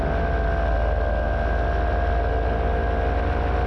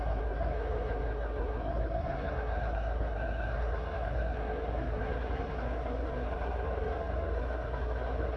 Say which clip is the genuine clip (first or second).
first